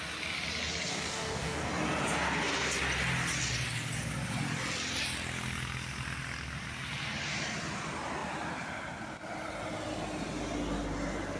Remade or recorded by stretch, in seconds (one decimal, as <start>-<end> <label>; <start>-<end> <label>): 0.0-0.9 recorded; 0.9-1.7 remade; 1.7-11.4 recorded